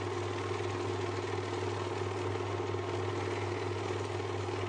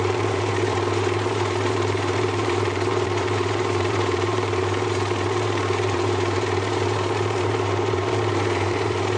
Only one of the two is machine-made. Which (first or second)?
second